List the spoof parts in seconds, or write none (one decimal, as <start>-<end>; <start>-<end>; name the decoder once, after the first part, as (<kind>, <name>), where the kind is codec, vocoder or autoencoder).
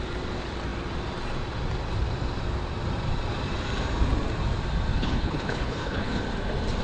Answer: 4.9-6.2 (codec, HILCodec)